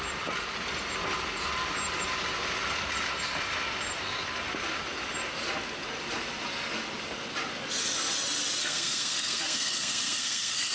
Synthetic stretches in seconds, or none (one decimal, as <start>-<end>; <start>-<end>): 8.6-10.7